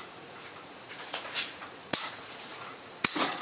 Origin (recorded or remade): remade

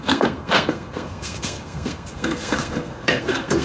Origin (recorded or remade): remade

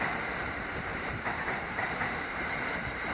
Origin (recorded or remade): remade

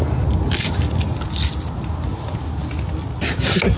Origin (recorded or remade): recorded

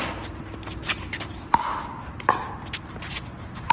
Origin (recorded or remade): recorded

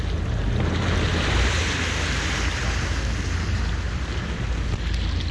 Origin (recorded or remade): recorded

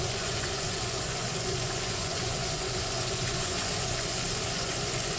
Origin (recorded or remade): remade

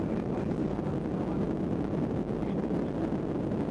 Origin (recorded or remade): recorded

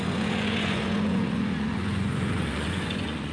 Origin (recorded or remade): remade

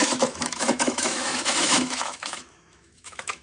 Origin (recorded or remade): remade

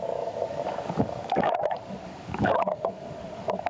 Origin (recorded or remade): remade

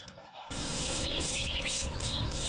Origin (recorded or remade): remade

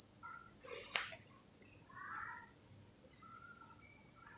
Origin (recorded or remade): recorded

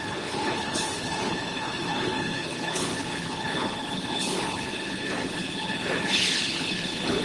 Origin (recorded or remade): remade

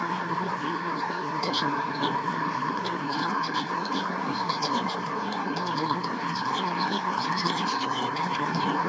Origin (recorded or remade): remade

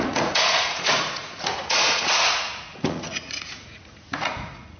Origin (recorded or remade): remade